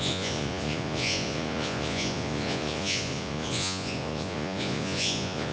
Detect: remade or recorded remade